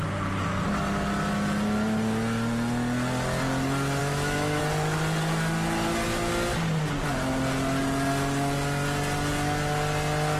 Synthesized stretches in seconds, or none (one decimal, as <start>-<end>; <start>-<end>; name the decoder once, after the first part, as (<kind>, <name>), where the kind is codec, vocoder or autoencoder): 4.0-4.6 (autoencoder, DAC-VAE)